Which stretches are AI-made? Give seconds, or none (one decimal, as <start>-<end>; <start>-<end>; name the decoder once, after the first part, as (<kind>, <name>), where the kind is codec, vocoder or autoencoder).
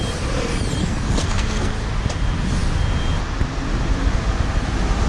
0.8-1.7 (codec, SNAC)